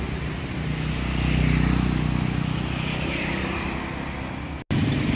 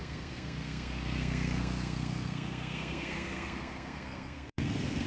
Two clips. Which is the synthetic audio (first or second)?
second